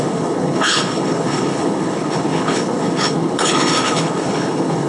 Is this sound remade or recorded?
remade